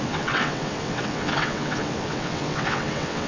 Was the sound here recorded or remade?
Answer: remade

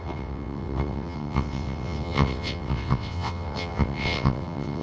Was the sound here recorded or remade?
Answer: remade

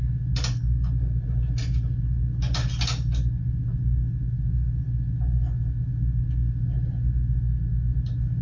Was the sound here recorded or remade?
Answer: recorded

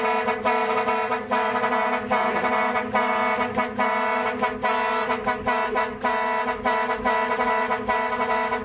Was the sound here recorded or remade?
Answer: recorded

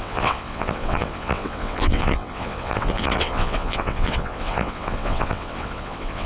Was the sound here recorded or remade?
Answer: remade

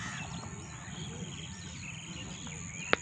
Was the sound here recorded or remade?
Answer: recorded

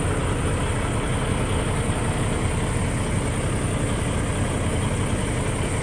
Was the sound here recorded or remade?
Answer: recorded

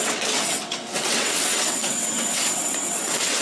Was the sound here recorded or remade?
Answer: remade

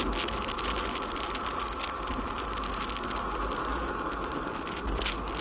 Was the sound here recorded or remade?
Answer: recorded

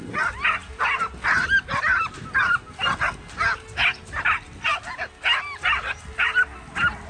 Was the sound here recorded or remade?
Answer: recorded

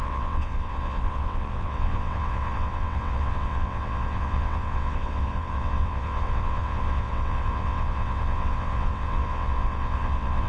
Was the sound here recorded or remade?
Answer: remade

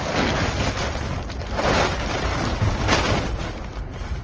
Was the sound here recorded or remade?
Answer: recorded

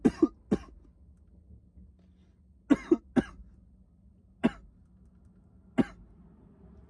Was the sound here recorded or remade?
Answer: recorded